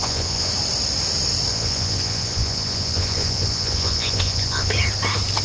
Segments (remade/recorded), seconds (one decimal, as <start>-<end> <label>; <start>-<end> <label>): 0.0-0.5 remade; 0.5-1.5 recorded; 1.5-4.7 remade; 4.7-5.4 recorded